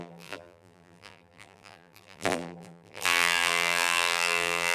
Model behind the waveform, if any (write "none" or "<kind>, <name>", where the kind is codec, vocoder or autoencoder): vocoder, BigVGAN v2